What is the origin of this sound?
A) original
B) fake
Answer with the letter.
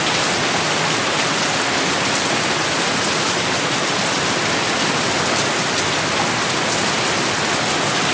A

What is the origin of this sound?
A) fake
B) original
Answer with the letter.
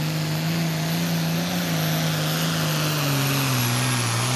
B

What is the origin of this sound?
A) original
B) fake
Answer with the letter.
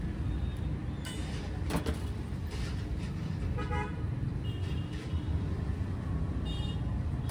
B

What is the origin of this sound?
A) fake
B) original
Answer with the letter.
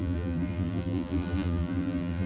A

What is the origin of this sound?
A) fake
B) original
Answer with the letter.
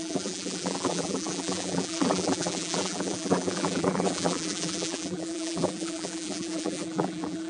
A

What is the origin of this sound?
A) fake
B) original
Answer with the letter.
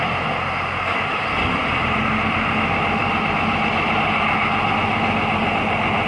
B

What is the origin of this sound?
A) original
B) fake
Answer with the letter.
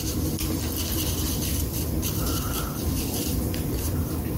B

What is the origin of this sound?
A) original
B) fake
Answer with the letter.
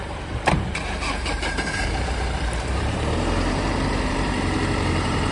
B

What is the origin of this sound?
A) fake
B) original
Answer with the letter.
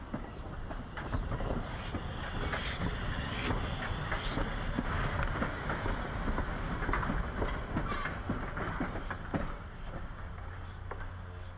B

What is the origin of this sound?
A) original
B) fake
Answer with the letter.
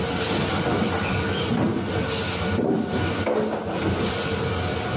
A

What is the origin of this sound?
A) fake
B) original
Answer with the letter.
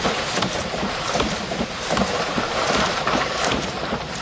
A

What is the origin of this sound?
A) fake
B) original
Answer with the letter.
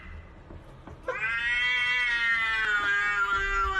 B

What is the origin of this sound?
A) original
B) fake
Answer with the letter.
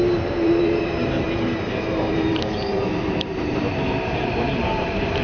B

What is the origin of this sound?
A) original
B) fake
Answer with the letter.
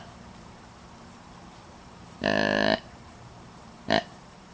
B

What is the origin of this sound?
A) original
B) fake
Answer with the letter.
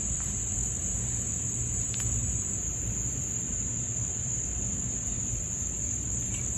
B